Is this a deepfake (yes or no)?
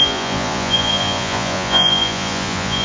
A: yes